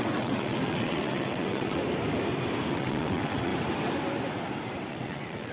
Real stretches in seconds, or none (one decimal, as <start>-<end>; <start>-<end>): 1.8-2.7; 3.5-4.9